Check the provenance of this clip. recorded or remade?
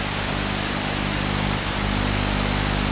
recorded